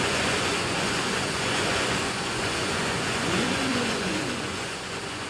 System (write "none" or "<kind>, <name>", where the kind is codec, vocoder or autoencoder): vocoder, Vocos